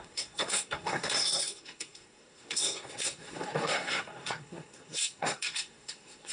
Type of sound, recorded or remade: remade